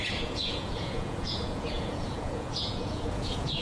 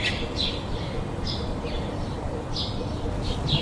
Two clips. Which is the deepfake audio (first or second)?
first